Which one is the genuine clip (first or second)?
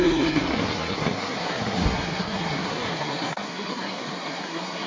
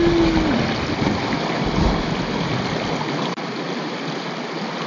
second